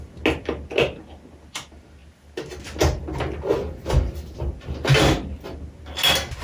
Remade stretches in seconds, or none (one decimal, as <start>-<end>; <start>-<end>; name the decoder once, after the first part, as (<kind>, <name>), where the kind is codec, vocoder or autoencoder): none